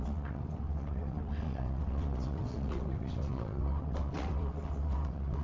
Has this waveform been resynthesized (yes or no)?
yes